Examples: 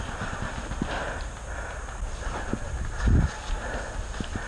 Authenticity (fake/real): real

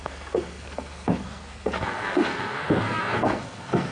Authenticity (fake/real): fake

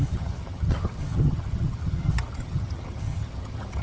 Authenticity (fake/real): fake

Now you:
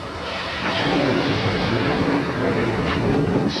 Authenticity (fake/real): fake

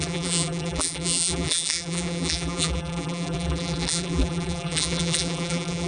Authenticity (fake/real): fake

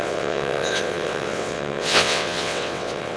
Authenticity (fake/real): fake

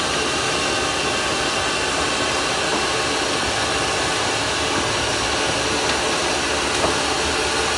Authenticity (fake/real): real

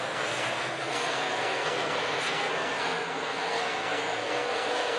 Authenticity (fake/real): fake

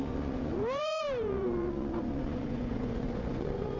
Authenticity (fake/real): fake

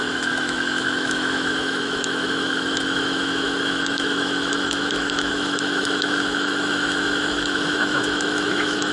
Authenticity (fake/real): fake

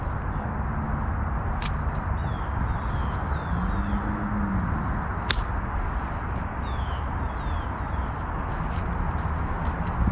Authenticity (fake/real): real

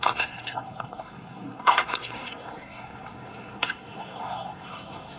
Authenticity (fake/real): fake